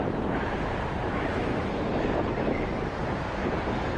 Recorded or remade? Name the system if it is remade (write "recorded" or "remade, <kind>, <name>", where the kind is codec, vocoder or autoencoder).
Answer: recorded